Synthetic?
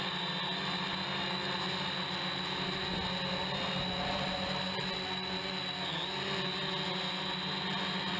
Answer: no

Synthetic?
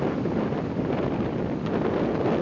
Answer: no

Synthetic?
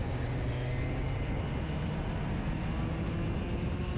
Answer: no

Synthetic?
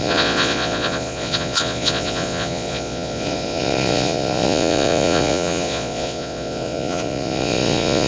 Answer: yes